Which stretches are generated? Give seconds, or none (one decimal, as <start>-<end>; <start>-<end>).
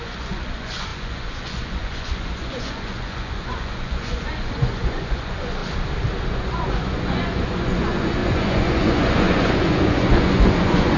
0.0-5.6; 6.2-11.0